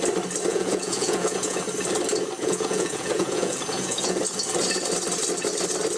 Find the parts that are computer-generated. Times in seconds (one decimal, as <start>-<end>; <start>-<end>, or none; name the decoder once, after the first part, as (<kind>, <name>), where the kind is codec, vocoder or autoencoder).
0.5-1.6 (vocoder, Vocos); 2.4-4.2